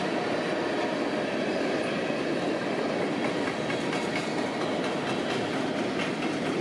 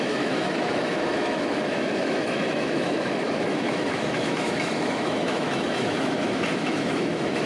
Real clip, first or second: first